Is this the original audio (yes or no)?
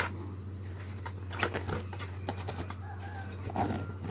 yes